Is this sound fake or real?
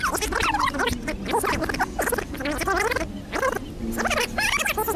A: real